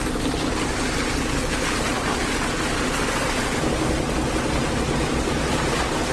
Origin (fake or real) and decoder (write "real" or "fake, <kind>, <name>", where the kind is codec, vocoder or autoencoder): real